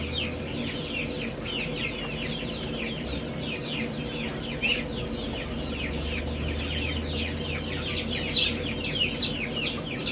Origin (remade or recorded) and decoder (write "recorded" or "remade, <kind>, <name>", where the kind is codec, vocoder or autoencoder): recorded